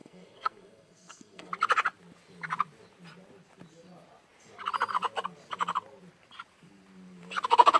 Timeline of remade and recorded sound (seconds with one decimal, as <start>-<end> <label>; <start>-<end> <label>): 0.0-1.5 remade; 1.5-7.8 recorded